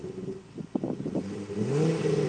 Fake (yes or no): no